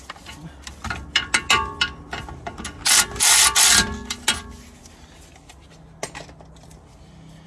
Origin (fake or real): real